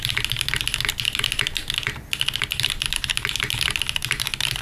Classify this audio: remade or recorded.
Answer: recorded